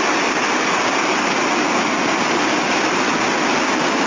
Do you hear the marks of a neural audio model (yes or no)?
no